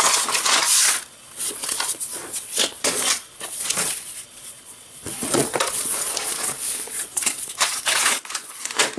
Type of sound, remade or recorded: remade